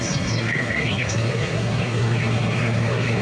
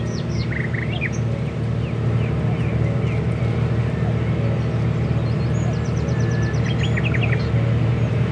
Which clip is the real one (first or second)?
second